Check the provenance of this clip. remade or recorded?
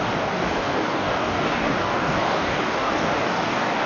remade